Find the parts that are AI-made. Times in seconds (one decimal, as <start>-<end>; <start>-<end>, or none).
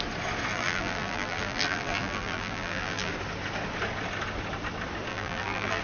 0.5-3.1; 5.1-5.8